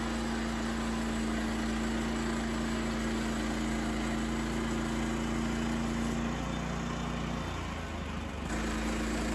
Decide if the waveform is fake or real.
real